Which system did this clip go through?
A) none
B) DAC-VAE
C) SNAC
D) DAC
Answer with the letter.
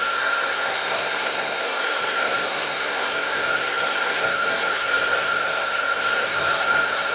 C